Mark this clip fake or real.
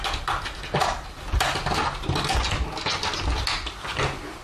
real